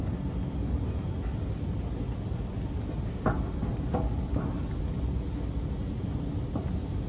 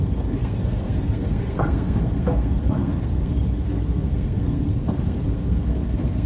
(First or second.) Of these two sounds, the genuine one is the first